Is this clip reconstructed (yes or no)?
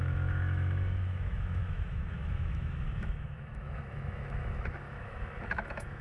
yes